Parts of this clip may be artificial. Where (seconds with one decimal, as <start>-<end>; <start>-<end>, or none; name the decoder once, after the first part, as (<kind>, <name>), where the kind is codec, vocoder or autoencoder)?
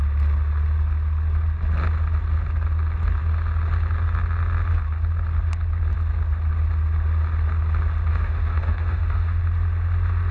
8.1-9.4 (autoencoder, DAC-VAE)